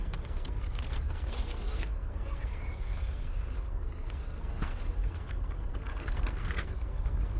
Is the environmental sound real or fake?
fake